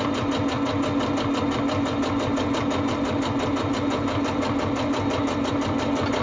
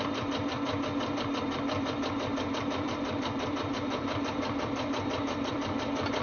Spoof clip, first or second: second